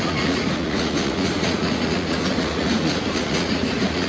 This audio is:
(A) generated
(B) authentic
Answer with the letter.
A